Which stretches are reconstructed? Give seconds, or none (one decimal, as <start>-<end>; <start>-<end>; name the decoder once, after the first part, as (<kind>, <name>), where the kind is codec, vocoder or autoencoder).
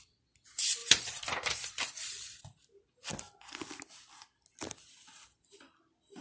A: 0.8-2.4 (vocoder, BigVGAN v2)